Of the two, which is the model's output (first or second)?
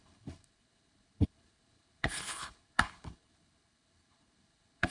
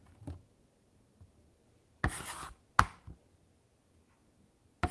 first